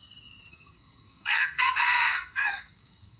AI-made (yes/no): yes